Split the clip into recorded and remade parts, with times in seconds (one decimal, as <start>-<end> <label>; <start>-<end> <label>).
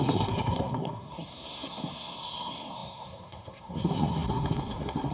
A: 0.0-5.1 remade